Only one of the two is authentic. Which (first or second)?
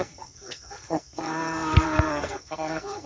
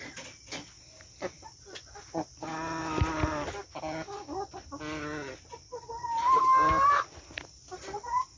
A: second